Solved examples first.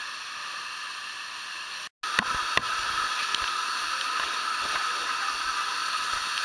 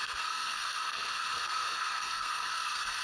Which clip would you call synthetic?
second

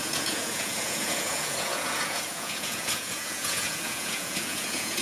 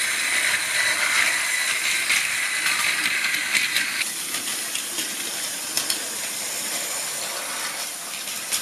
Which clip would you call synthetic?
first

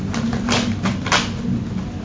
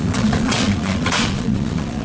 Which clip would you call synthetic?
second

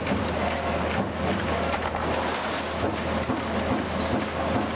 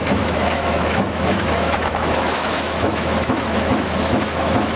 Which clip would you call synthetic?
second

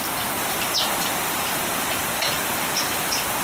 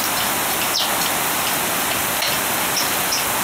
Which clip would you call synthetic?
first